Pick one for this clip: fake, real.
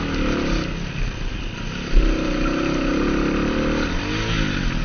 real